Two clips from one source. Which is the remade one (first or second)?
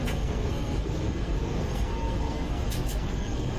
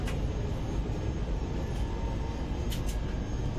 first